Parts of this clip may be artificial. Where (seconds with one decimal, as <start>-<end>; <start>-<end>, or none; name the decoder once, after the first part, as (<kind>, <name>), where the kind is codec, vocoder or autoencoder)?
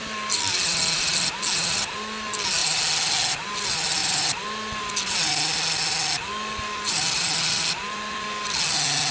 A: none